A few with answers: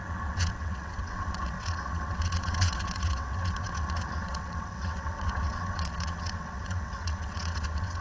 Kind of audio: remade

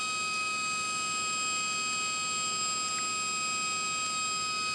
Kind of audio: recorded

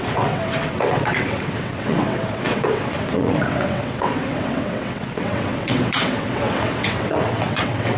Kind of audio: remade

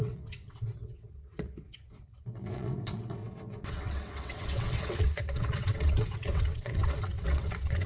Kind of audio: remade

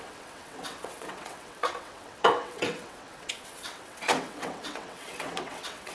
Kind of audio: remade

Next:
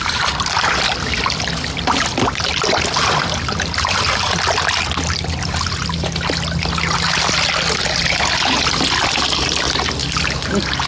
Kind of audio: recorded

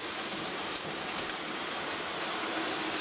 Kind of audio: recorded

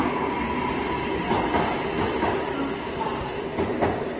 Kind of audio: recorded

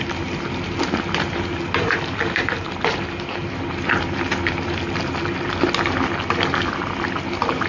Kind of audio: recorded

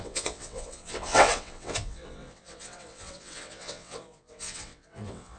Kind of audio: remade